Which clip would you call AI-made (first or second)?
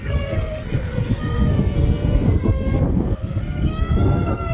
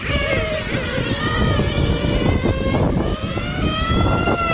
first